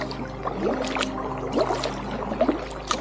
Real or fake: real